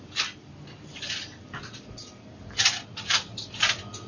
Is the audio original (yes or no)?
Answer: yes